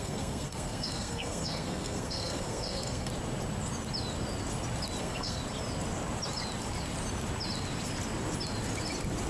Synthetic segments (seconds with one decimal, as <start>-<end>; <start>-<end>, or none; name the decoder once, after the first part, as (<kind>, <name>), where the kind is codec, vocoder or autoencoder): 0.0-3.1 (codec, SNAC); 5.0-5.4